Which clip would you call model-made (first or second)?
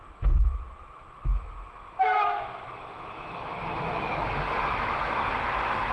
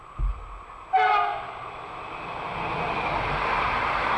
first